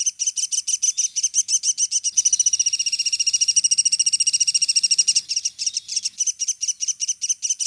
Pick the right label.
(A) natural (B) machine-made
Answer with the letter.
A